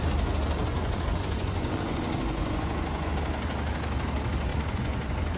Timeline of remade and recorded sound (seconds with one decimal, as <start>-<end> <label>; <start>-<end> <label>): 0.0-0.7 recorded; 0.7-3.1 remade; 3.1-4.5 recorded; 4.5-5.4 remade